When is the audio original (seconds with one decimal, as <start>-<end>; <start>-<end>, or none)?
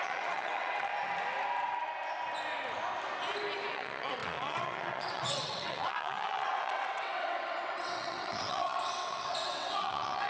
0.9-3.7